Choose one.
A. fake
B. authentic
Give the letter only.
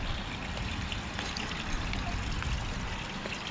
B